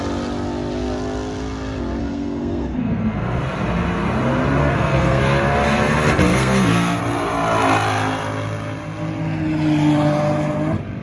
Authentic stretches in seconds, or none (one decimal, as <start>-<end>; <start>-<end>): 0.0-2.0; 3.4-4.6; 5.2-6.3; 7.0-11.0